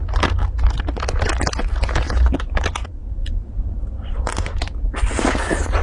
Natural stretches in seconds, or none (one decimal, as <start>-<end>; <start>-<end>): 0.0-5.8